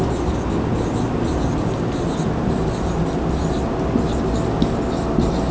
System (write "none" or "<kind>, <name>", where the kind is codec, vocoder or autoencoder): none